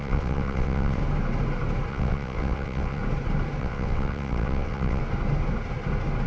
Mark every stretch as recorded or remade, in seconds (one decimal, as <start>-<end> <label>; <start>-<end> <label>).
0.0-1.0 remade; 1.0-1.9 recorded; 1.9-3.0 remade; 3.0-3.6 recorded; 3.6-5.0 remade; 5.0-6.3 recorded